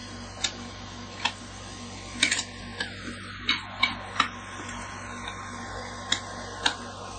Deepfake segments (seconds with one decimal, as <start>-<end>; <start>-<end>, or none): none